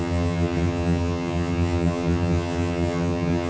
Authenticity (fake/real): fake